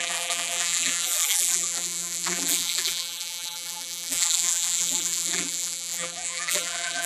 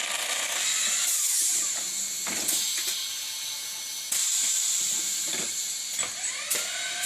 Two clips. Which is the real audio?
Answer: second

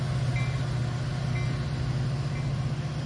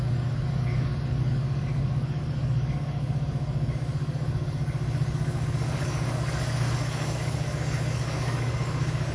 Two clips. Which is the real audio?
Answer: first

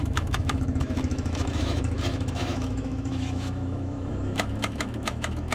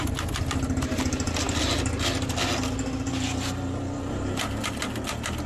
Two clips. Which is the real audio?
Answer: second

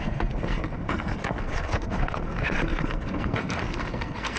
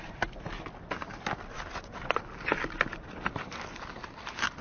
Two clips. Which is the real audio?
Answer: second